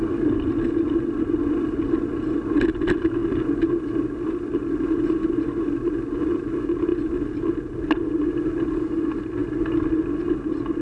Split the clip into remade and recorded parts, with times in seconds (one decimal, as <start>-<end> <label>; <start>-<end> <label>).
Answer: 0.0-10.8 recorded